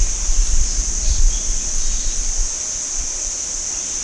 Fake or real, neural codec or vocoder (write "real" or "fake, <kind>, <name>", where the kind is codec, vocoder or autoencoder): fake, vocoder, BigVGAN v2